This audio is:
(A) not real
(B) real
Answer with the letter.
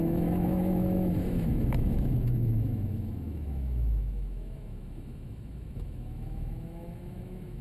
A